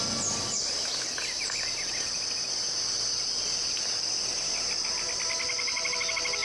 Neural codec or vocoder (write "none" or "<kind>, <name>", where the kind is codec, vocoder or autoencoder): none